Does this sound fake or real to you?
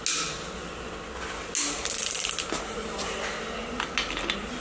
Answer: real